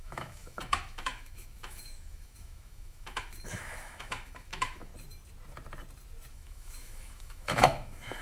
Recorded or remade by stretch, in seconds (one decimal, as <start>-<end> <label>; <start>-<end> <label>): 0.0-4.9 remade; 4.9-6.3 recorded; 6.3-8.2 remade

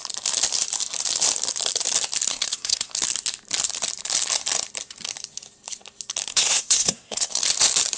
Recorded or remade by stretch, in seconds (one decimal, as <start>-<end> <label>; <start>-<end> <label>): 0.0-2.3 recorded; 2.3-2.9 remade; 2.9-6.3 recorded; 6.3-7.4 remade; 7.4-8.0 recorded